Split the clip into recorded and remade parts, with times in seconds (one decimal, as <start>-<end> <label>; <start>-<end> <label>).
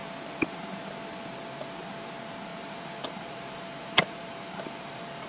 0.0-2.5 recorded; 2.5-5.3 remade